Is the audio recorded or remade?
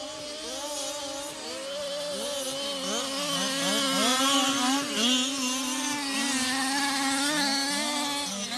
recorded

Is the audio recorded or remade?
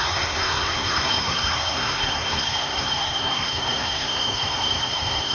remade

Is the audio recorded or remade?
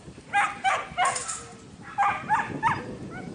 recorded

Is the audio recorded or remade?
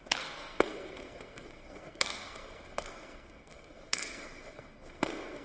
remade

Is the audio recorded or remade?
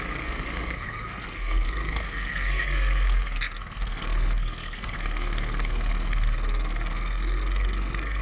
remade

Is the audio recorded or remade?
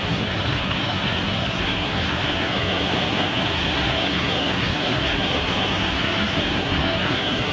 remade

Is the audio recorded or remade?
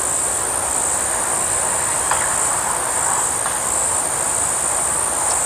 recorded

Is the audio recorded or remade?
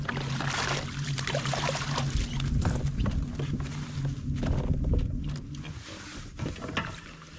recorded